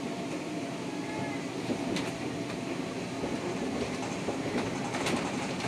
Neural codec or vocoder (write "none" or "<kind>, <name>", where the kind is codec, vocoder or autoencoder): vocoder, BigVGAN v2